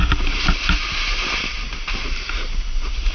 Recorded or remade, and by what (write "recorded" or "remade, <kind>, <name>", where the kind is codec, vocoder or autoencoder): recorded